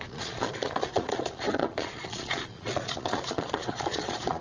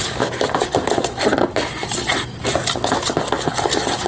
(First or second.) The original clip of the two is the second